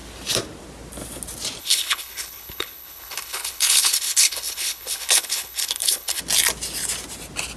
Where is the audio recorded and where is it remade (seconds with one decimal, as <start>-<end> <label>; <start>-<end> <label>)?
0.0-1.6 recorded; 1.6-6.2 remade; 6.2-7.6 recorded